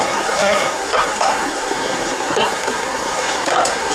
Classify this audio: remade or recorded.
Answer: remade